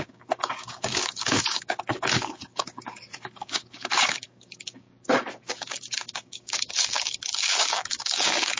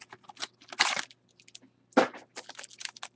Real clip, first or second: second